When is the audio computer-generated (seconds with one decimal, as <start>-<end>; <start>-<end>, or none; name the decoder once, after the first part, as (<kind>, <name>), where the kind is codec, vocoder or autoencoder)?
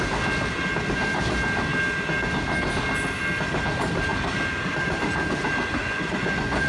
5.8-6.7 (vocoder, Vocos)